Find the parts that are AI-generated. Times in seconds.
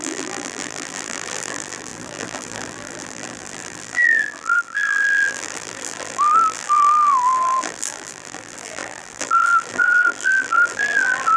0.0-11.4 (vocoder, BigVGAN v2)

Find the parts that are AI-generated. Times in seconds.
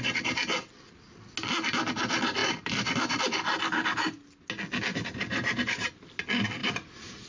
2.4-3.2 (vocoder, BigVGAN v2); 4.9-5.9; 6.6-7.3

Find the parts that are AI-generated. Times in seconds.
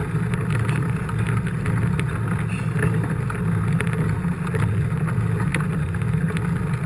none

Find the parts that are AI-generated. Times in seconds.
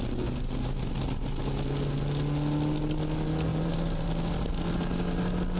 3.5-4.1 (vocoder, BigVGAN v2)